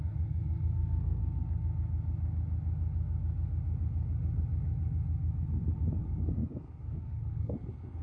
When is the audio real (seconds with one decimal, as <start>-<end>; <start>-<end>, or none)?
1.2-6.0